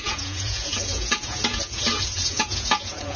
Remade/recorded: remade